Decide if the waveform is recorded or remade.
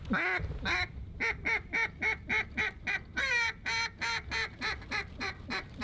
recorded